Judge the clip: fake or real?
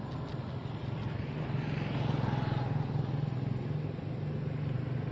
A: real